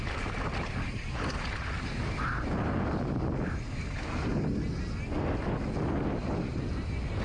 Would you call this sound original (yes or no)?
yes